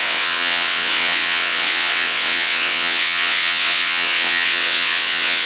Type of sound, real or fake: fake